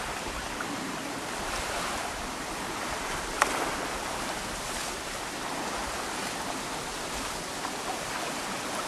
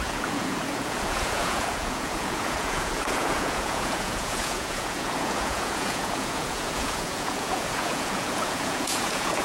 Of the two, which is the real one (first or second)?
first